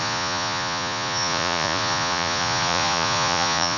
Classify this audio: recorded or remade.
remade